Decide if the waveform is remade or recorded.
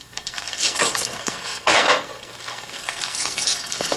remade